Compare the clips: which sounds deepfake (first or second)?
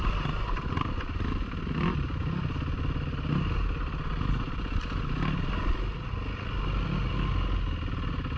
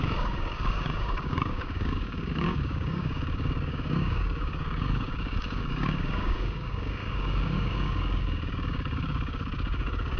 second